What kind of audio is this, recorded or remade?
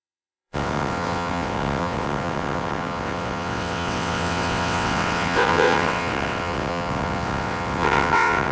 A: remade